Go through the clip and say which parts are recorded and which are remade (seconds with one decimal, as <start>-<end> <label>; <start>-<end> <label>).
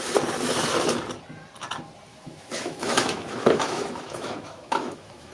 0.0-2.1 recorded; 2.1-5.3 remade